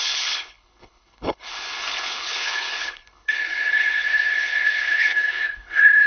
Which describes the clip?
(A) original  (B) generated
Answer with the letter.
B